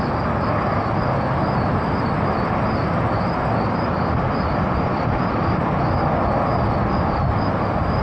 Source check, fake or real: real